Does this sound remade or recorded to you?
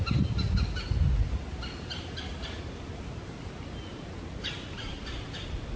recorded